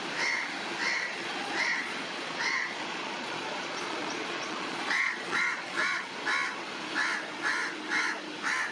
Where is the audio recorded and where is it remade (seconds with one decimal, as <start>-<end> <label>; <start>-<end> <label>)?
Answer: 0.0-1.1 recorded; 1.1-6.1 remade; 6.1-8.7 recorded